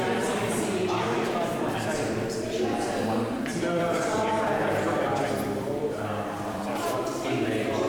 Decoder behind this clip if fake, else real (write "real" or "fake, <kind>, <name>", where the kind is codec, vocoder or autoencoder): fake, vocoder, BigVGAN v2